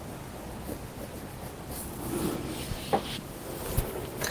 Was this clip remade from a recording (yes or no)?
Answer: no